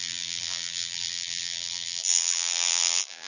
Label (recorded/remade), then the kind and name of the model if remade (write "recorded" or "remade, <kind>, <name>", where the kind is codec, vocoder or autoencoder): remade, vocoder, BigVGAN v2